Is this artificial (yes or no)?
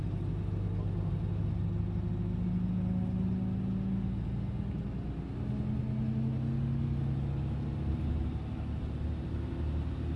no